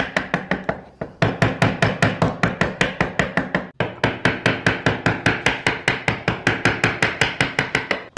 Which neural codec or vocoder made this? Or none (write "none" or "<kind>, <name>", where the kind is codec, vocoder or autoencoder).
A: none